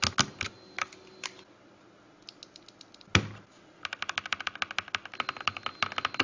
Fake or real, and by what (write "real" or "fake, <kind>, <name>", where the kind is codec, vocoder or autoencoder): real